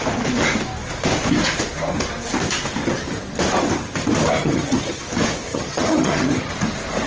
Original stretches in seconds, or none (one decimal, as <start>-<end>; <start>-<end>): 0.0-4.4; 5.0-5.5; 6.5-7.1